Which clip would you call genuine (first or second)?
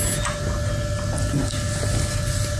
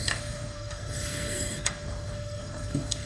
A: first